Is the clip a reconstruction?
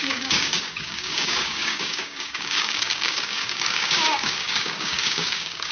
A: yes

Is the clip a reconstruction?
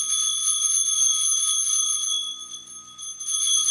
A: no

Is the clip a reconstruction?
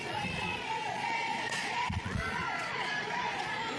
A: yes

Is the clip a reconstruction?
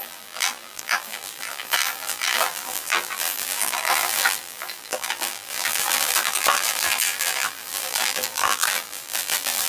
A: yes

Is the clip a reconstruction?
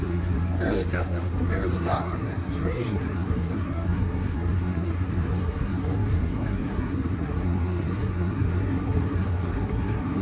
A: yes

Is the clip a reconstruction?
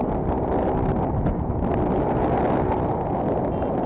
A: no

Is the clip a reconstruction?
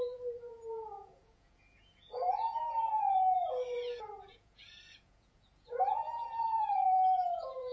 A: yes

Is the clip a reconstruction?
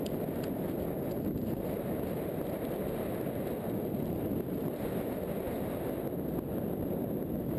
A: no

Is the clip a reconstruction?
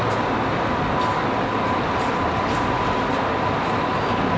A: no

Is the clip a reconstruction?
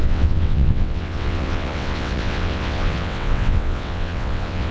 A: yes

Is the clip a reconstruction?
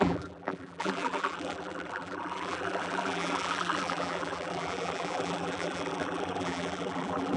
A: yes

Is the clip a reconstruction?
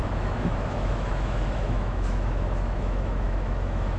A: yes